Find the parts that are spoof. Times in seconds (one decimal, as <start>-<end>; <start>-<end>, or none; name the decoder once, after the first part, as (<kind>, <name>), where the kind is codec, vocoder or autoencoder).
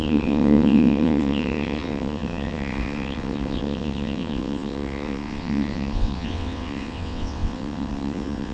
0.0-8.5 (vocoder, WaveNeXt)